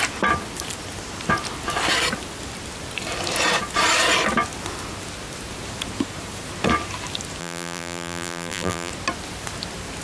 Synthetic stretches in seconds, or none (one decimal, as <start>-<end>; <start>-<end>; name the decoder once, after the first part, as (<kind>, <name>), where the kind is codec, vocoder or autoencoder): 7.4-8.9 (vocoder, BigVGAN v2)